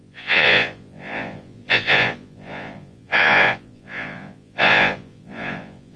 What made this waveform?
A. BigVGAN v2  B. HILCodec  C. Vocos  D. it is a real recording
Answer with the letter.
C